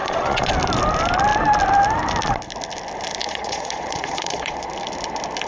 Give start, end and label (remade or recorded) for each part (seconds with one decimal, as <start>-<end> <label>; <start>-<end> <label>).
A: 0.0-0.5 remade; 0.5-3.2 recorded; 3.2-4.7 remade; 4.7-5.5 recorded